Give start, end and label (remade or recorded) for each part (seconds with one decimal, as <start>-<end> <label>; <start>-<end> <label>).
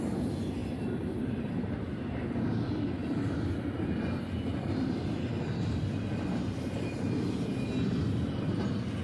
0.0-9.0 recorded